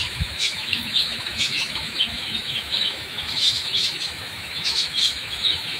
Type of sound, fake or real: fake